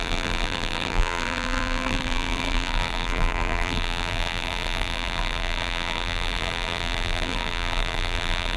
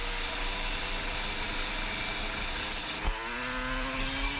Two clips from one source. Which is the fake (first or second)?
first